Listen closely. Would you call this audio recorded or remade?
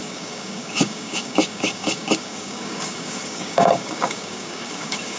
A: remade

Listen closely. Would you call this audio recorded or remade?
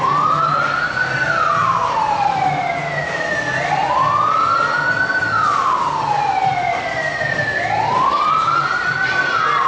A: recorded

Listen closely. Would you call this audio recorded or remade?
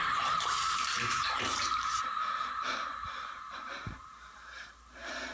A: remade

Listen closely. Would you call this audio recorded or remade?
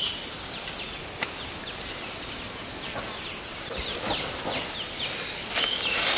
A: recorded